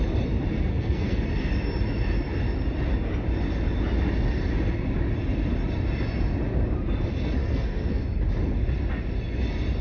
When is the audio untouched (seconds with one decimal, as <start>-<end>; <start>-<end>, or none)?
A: 0.0-0.7; 1.3-7.4; 8.0-9.8